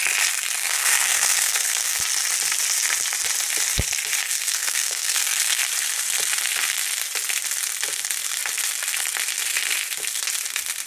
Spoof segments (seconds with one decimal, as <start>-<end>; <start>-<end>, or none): 0.6-2.0; 4.2-5.6